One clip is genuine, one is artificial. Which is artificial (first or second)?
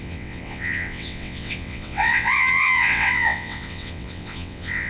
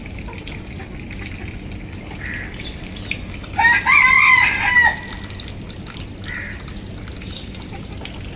first